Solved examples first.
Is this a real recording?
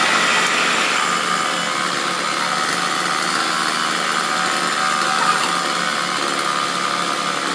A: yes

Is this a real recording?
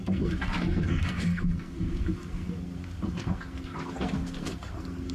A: no